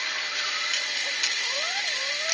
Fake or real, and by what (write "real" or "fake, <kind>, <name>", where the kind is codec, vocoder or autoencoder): fake, vocoder, BigVGAN v2